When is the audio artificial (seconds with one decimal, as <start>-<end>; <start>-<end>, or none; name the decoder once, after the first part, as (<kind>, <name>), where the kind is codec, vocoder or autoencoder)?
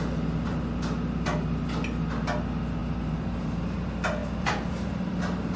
2.8-3.6 (vocoder, BigVGAN v2); 4.2-5.1